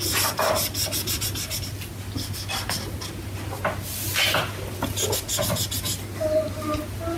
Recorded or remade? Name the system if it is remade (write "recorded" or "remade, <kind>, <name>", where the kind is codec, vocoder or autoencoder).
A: recorded